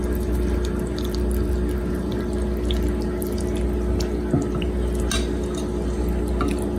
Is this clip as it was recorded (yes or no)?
yes